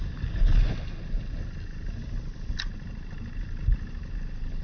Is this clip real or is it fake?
real